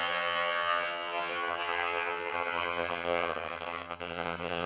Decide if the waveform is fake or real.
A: fake